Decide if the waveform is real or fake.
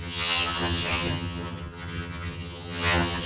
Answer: fake